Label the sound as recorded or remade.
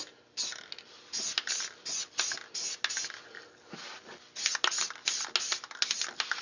recorded